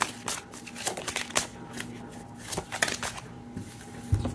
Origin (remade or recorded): recorded